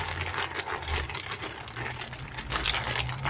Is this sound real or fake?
real